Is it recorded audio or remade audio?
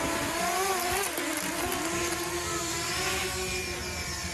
recorded